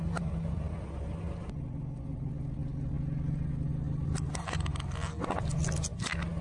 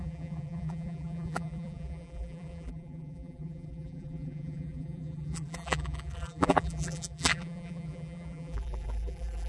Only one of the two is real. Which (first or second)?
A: first